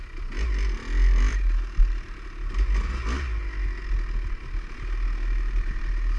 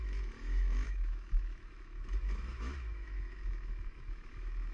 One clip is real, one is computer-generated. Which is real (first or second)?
first